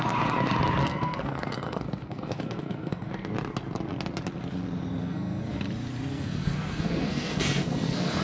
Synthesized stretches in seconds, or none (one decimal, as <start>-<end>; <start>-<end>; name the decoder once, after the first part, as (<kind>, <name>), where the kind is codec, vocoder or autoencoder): 0.8-3.1 (codec, SNAC); 5.0-5.6; 6.1-8.2